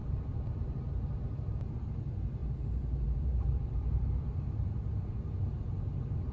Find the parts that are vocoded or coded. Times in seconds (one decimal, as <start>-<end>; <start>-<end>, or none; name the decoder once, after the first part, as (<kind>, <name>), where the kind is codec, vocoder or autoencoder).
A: 0.0-2.0 (vocoder, BigVGAN v2); 2.4-5.4